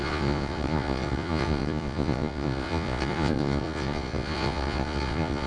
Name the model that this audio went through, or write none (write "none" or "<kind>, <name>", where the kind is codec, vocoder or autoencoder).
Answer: vocoder, Vocos